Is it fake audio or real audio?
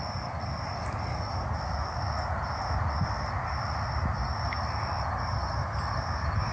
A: real